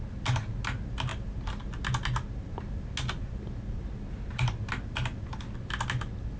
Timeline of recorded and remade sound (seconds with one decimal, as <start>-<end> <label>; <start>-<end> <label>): 0.0-6.4 recorded